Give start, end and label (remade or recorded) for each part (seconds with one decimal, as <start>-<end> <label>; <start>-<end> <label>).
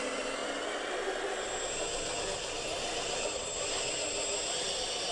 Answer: 0.0-5.1 recorded